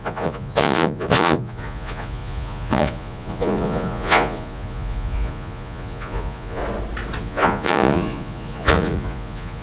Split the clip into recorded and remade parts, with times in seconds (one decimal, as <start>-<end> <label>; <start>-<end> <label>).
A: 0.0-6.6 remade; 6.6-7.2 recorded; 7.2-9.6 remade